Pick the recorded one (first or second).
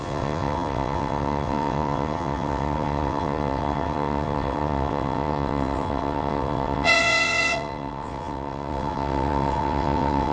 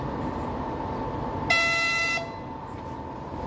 second